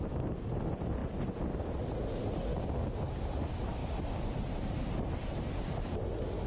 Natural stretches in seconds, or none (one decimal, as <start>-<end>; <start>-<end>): 0.0-6.5

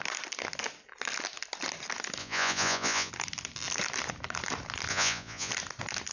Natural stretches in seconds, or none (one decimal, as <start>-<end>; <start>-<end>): 0.0-2.2; 3.1-4.9; 5.5-6.1

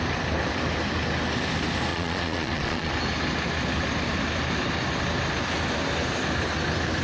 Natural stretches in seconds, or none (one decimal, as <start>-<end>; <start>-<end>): 0.0-1.9; 2.9-7.0

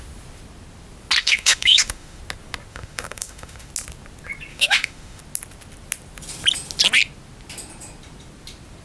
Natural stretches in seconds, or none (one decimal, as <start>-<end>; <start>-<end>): 0.0-1.2; 2.2-2.7; 3.7-4.5; 5.2-8.8

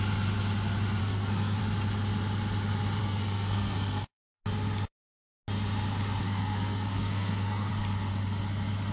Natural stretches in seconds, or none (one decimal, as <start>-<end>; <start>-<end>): 0.0-1.0; 1.6-3.0; 4.4-6.2; 7.7-8.9

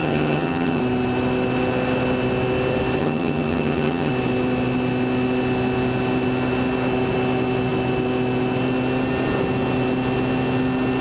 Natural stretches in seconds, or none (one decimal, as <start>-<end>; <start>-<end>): 0.8-3.0; 4.1-11.0

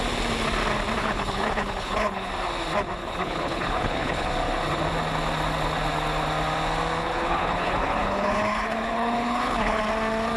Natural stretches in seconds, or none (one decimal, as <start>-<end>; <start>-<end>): 0.0-1.0; 2.3-3.0; 4.3-7.0; 9.8-10.4